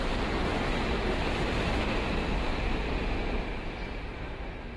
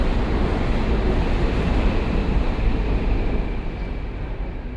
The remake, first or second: first